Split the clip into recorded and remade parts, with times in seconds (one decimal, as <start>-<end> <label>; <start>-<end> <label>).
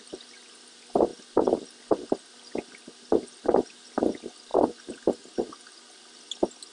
0.0-6.7 recorded